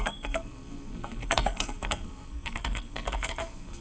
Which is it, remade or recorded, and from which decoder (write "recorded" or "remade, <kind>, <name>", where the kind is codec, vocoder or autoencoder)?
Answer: remade, codec, SNAC